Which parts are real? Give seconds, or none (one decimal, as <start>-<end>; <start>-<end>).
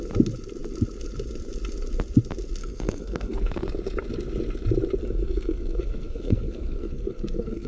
0.0-2.6; 3.5-5.0